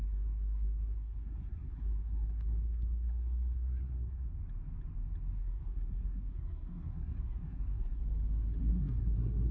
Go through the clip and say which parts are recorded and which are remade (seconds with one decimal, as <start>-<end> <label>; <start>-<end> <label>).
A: 0.0-4.3 remade; 4.3-5.3 recorded; 5.3-8.0 remade; 8.0-8.6 recorded; 8.6-9.5 remade